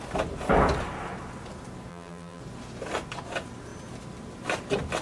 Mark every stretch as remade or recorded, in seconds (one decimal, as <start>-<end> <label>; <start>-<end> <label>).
0.0-1.9 recorded; 1.9-2.4 remade; 2.4-5.0 recorded